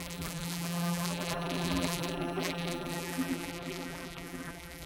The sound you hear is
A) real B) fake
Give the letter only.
B